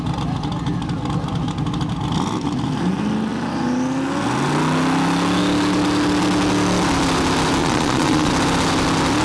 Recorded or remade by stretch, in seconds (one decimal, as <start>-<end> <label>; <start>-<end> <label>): 0.0-7.6 recorded; 7.6-8.3 remade; 8.3-9.2 recorded